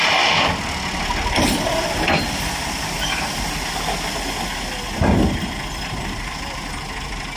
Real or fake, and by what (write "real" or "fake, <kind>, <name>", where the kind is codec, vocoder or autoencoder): real